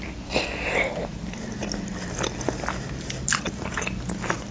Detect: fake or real real